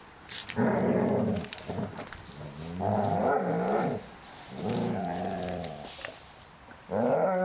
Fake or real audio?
real